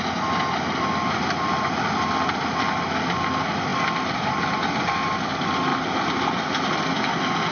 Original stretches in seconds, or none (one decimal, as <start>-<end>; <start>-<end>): 0.0-5.7; 6.7-7.5